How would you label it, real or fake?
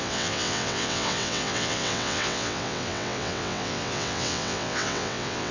fake